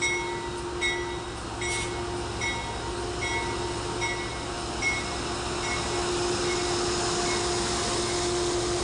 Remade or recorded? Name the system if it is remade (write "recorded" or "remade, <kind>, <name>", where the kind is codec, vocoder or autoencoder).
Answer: recorded